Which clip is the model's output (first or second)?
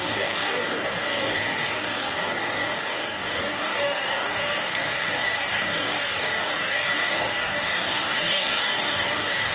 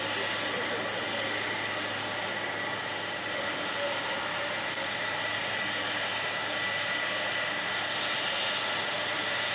first